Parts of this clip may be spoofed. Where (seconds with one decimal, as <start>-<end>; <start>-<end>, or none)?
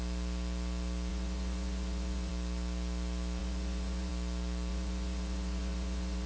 1.1-2.3; 3.4-4.1; 4.7-6.3